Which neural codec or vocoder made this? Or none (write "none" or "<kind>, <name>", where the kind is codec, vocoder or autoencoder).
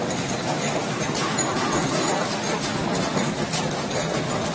vocoder, BigVGAN v2